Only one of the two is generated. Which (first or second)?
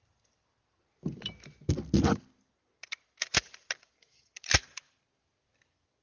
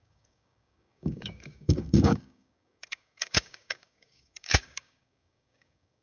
second